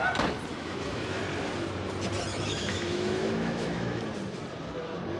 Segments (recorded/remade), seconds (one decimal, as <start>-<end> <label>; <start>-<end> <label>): 0.0-0.5 recorded; 0.5-1.2 remade; 1.2-2.3 recorded; 2.3-4.0 remade; 4.0-5.2 recorded